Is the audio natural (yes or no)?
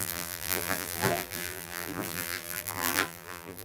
no